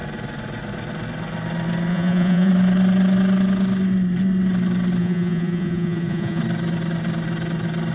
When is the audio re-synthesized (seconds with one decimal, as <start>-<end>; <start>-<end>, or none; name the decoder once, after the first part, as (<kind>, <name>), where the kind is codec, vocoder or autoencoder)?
1.9-2.5 (vocoder, Vocos); 5.0-6.4